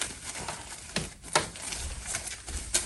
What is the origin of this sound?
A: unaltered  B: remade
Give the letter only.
A